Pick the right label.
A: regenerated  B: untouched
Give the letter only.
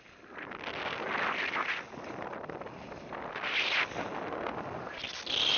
B